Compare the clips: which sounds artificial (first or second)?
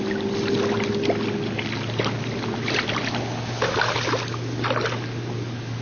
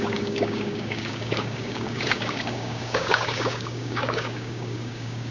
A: second